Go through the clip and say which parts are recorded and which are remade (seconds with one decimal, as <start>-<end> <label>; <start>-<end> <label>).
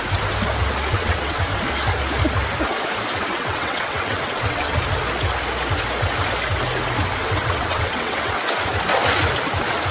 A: 0.0-0.9 recorded; 0.9-1.4 remade; 1.4-3.3 recorded; 3.3-4.8 remade; 4.8-7.2 recorded; 7.2-8.4 remade; 8.4-9.9 recorded